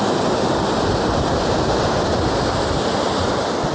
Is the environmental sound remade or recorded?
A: recorded